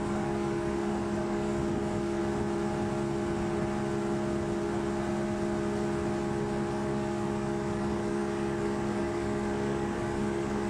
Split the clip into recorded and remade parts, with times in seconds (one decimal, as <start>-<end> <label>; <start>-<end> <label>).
0.0-2.2 remade; 2.2-6.7 recorded; 6.7-10.7 remade